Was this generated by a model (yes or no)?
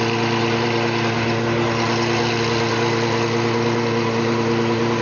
no